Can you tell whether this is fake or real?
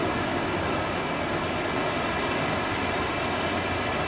real